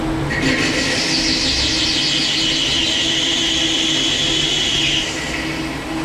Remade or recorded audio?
recorded